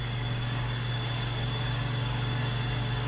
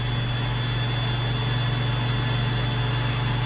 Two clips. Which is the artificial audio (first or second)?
first